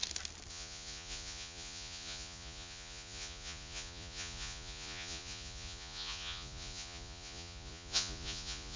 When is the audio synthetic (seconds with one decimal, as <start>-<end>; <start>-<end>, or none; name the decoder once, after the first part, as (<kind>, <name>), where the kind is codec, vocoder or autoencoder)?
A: 0.5-8.8 (vocoder, Vocos)